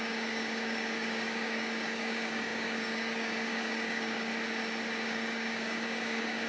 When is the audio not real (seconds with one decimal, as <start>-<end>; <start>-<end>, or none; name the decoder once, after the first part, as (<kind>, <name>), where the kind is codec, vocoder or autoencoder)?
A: 0.0-4.3 (codec, DAC); 5.0-6.5